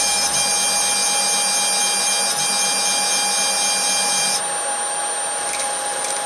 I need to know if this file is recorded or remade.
recorded